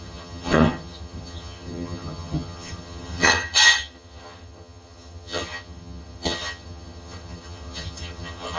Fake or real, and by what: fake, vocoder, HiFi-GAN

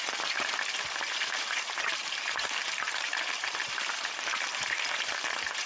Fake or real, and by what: fake, vocoder, BigVGAN v2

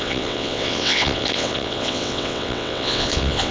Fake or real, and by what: fake, vocoder, WaveNeXt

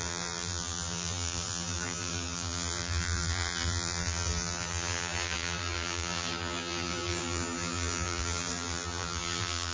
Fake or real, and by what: fake, vocoder, BigVGAN v2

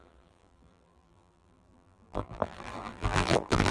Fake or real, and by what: fake, vocoder, BigVGAN v2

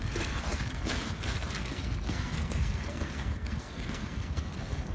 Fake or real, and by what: fake, codec, SNAC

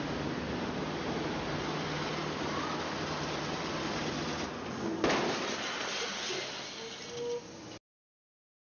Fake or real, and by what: real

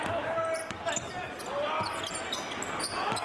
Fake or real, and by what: real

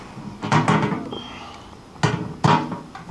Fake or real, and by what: real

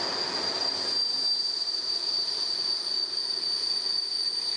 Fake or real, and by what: real